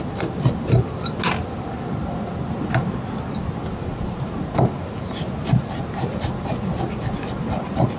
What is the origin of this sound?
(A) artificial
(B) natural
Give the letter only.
B